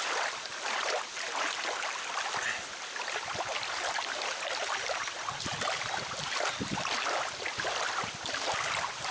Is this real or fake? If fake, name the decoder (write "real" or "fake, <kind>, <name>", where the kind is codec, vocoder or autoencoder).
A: real